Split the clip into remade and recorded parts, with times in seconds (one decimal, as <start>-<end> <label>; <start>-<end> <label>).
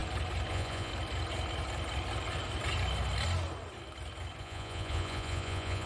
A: 0.0-0.5 recorded; 0.5-0.9 remade; 0.9-4.4 recorded; 4.4-5.9 remade